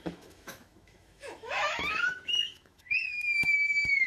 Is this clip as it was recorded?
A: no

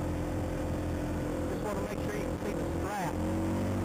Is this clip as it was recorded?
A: yes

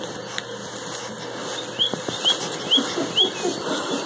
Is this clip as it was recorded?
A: yes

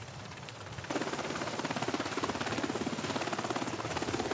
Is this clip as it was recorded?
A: yes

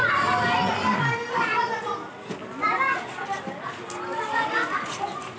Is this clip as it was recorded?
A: yes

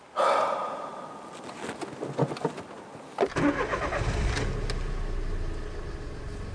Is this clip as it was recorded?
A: yes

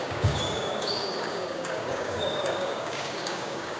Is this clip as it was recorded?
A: no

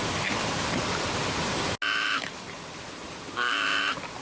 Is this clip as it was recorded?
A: yes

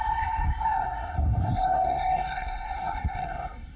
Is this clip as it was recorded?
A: no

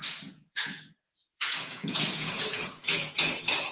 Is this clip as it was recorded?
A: no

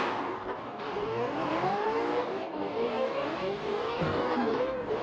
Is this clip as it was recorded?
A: no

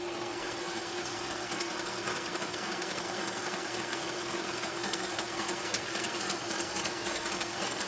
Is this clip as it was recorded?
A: no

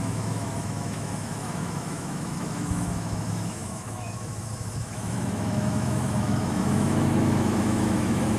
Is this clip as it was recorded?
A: no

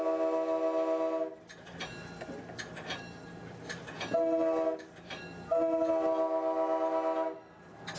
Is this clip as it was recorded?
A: yes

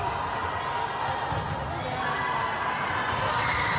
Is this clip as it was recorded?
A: yes